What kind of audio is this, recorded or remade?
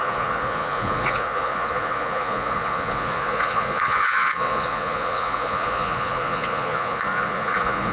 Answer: remade